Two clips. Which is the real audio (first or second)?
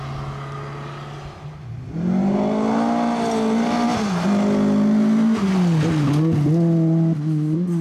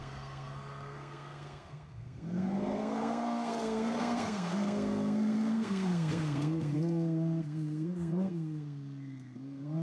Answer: first